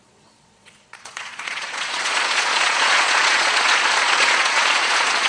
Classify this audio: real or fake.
fake